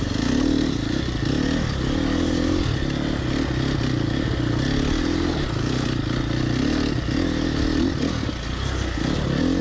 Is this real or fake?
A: real